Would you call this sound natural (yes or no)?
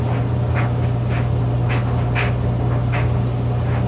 yes